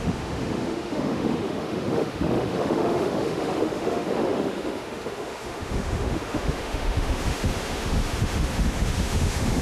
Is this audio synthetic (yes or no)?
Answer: yes